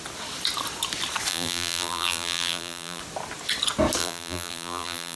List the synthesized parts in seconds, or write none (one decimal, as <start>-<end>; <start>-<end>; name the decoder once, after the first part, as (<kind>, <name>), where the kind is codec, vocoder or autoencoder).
1.3-3.0 (vocoder, BigVGAN v2); 4.0-5.2